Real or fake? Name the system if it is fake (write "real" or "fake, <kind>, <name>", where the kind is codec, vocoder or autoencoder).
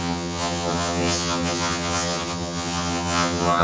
fake, vocoder, HiFi-GAN